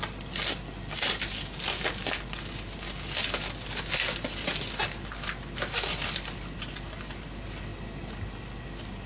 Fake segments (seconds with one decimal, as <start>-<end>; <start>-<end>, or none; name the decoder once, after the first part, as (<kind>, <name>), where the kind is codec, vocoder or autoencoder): none